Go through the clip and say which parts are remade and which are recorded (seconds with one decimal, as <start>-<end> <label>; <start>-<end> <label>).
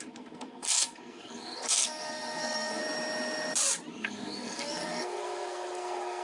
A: 0.0-2.8 remade; 2.8-3.9 recorded; 3.9-6.2 remade